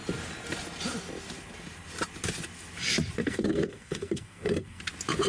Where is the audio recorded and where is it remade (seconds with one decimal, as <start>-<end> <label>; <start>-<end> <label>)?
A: 0.0-3.2 recorded; 3.2-4.8 remade; 4.8-5.3 recorded